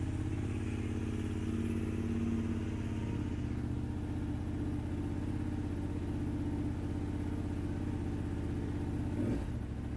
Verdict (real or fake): real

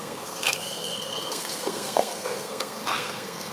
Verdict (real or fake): fake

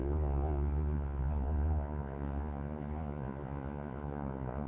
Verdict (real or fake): fake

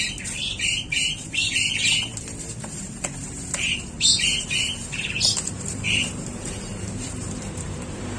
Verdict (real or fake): fake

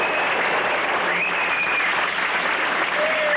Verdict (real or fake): real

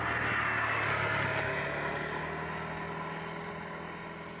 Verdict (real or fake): real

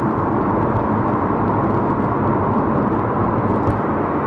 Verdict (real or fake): real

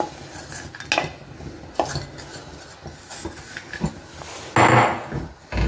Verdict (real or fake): real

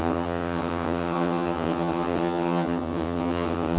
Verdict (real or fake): fake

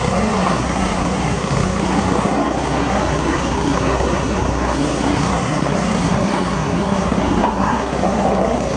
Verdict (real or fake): fake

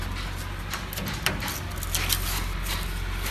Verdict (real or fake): real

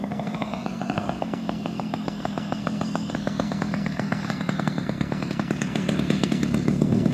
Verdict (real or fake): fake